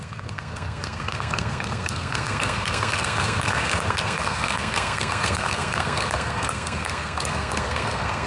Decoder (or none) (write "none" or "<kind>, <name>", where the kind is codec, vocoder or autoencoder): codec, SNAC